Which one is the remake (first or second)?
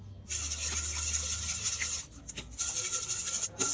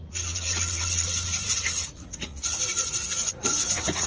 second